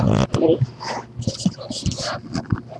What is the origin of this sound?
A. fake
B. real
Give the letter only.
B